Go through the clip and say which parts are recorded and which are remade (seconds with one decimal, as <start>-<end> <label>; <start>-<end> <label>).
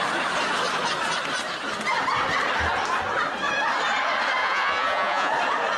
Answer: 0.0-4.4 recorded; 4.4-5.3 remade; 5.3-5.8 recorded